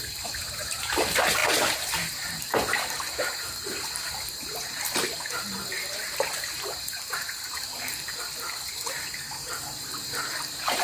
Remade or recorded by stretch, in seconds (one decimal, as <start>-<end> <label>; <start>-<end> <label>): 0.0-10.8 remade